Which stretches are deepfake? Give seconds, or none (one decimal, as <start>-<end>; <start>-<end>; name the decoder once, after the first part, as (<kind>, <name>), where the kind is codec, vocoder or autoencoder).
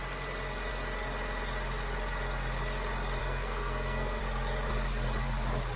3.2-4.2 (codec, SNAC)